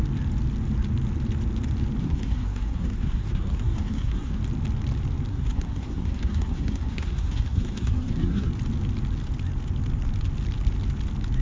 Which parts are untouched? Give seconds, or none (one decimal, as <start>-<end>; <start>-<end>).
0.0-2.0; 4.4-5.3; 8.5-11.4